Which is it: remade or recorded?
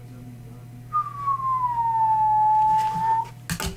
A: recorded